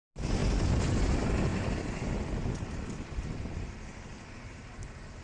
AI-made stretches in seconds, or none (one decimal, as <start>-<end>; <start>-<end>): none